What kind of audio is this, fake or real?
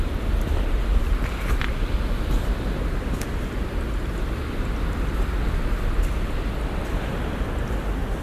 real